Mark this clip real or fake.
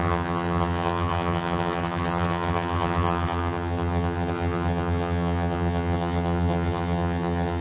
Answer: fake